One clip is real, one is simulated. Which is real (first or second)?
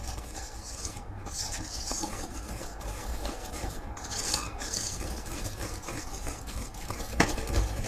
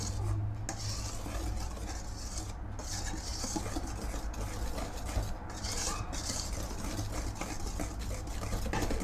second